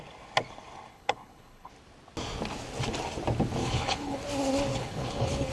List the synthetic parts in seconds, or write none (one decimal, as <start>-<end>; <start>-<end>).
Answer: 0.9-1.7; 3.6-4.2; 4.7-5.5